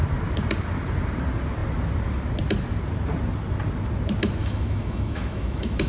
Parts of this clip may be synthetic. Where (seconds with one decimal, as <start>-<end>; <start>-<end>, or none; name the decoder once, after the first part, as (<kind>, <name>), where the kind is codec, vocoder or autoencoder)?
4.4-5.9 (autoencoder, DAC-VAE)